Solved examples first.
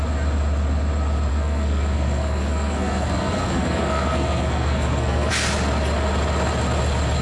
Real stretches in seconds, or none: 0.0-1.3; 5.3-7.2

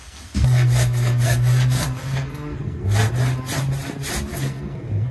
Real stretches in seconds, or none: 3.1-4.3

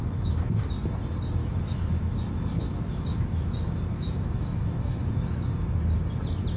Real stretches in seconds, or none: 0.6-1.4; 5.4-6.6

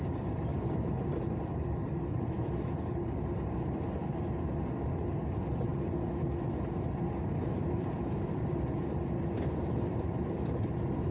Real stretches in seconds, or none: 4.0-4.7; 5.7-7.8

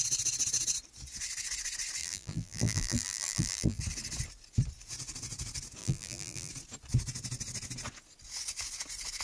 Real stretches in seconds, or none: 0.0-2.0; 3.8-5.8; 6.5-9.2

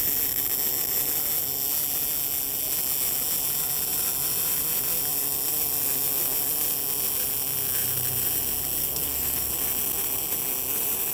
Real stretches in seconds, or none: 0.0-8.8; 9.5-11.1

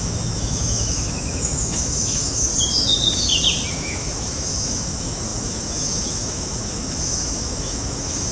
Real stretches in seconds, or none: 2.5-3.7

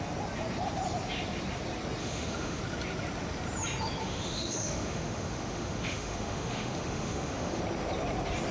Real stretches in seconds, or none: 0.0-2.0; 2.6-4.0; 7.6-8.5